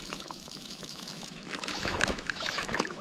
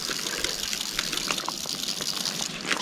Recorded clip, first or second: second